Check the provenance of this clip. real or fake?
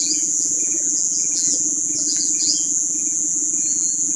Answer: fake